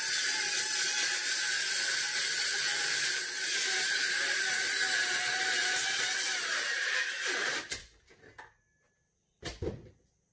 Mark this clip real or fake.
real